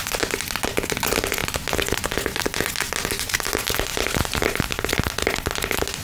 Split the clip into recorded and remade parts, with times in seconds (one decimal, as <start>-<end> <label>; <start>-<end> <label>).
0.0-6.0 recorded